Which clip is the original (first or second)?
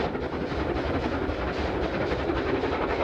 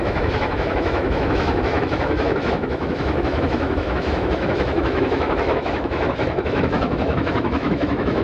first